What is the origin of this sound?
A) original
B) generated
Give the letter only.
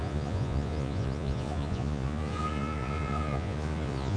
B